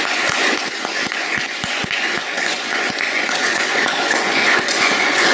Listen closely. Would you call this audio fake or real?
fake